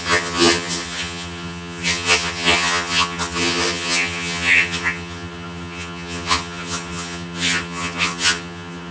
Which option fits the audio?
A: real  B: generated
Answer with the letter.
B